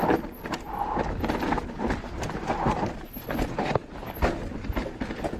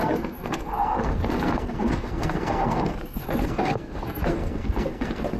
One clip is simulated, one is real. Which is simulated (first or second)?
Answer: second